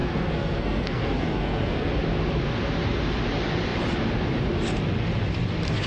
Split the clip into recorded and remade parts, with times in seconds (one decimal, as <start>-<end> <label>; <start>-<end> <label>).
0.0-1.9 remade; 1.9-5.9 recorded